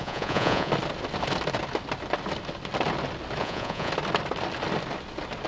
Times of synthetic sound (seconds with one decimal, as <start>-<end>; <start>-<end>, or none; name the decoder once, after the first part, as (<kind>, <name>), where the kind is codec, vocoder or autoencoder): 0.0-0.7 (vocoder, Vocos); 3.4-3.9